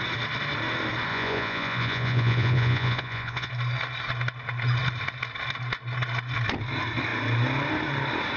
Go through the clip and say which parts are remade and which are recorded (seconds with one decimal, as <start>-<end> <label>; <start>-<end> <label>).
0.0-1.1 recorded; 1.1-3.5 remade; 3.5-8.4 recorded